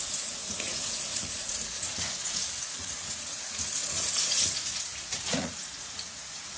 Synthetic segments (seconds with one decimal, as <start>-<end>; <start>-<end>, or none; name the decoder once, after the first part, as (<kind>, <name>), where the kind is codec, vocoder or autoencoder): 0.0-6.6 (vocoder, Vocos)